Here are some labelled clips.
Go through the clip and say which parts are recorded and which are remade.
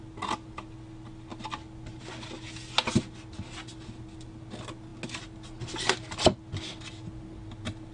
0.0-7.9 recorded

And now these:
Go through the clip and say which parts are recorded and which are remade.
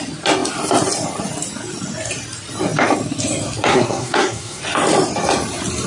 0.0-3.7 recorded; 3.7-4.6 remade; 4.6-5.9 recorded